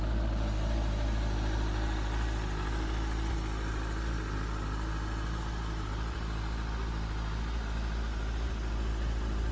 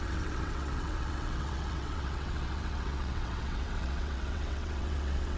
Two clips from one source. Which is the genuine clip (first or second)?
first